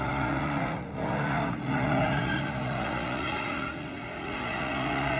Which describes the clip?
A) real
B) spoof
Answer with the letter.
B